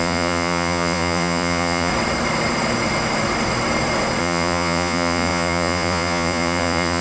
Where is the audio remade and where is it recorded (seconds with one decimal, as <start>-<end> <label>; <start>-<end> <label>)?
0.0-1.9 remade; 1.9-4.2 recorded; 4.2-7.0 remade